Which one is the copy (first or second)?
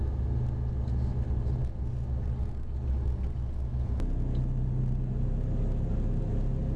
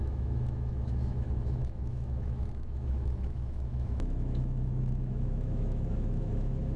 second